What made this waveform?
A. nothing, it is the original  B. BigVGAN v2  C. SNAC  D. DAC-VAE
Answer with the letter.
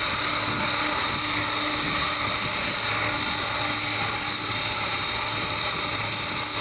A